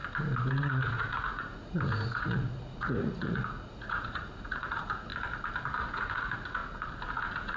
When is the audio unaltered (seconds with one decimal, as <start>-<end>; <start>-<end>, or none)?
0.0-0.6; 5.1-5.9; 6.6-7.1